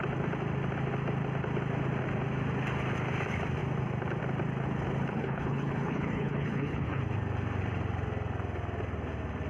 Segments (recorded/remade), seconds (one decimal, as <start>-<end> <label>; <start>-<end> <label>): 0.0-5.1 recorded; 5.1-7.0 remade; 7.0-9.5 recorded